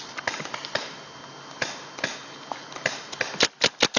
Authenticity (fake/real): real